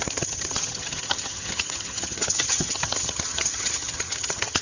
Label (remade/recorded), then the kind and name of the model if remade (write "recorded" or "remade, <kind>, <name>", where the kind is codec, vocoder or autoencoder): remade, vocoder, HiFi-GAN